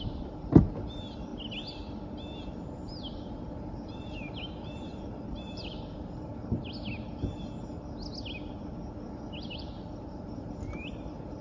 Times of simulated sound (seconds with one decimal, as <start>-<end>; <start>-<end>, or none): 0.0-1.3; 2.5-6.3; 9.5-11.4